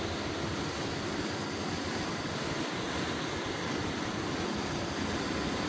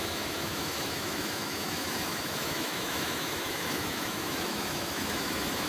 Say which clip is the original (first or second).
first